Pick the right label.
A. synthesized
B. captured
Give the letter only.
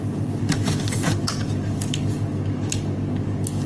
A